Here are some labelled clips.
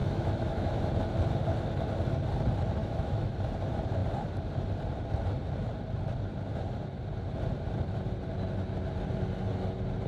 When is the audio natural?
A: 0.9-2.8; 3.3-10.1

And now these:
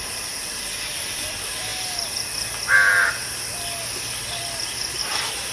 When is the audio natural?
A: 0.0-5.5